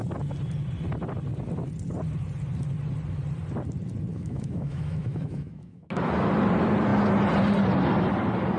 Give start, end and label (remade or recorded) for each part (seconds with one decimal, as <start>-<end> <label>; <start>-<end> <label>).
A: 0.0-4.1 recorded; 4.1-5.9 remade; 5.9-8.6 recorded